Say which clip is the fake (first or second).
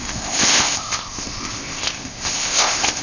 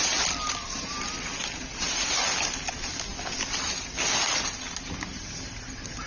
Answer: first